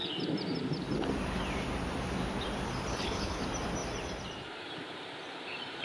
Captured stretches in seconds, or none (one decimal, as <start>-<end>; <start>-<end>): 0.0-2.9; 3.4-5.8